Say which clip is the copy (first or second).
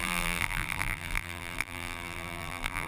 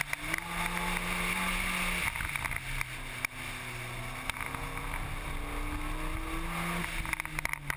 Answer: first